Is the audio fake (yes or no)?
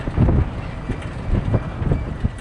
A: no